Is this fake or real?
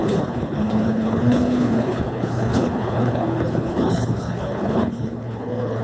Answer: fake